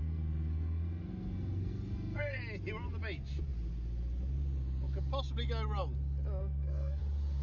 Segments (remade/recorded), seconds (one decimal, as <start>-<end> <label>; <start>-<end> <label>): 0.0-2.4 remade; 2.4-6.4 recorded; 6.4-7.0 remade; 7.0-7.4 recorded